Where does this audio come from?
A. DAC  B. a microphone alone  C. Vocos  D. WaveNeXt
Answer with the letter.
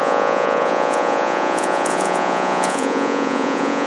C